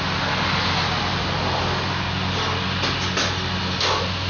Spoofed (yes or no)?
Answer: no